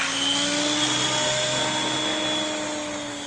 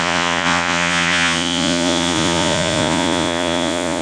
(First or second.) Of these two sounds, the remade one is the second